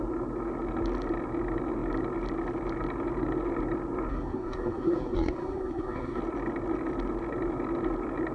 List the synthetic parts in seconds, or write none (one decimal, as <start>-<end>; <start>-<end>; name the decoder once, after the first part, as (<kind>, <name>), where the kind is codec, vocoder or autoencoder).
4.1-6.2 (codec, SNAC)